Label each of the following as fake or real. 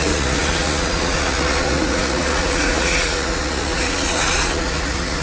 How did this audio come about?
fake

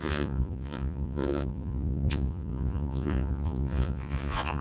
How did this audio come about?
fake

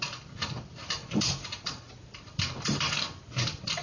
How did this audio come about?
real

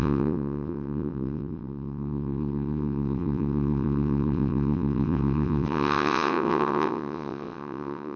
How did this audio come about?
fake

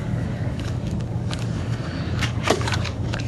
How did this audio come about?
fake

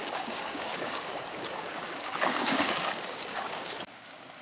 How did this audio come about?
fake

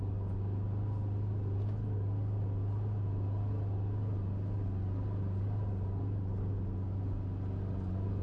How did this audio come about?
real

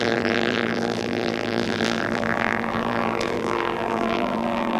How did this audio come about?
fake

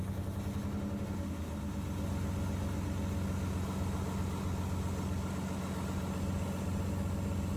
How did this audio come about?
real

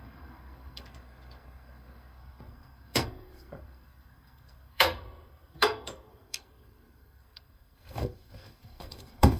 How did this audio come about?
fake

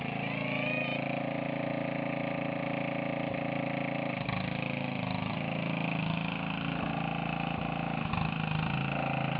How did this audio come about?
real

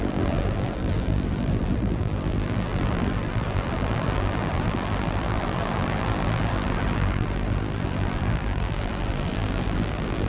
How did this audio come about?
fake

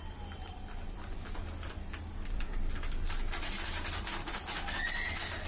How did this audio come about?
real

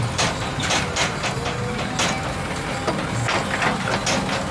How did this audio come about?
real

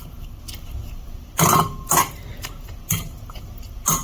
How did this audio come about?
real